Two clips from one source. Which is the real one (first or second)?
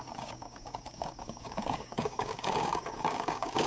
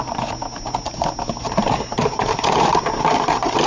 second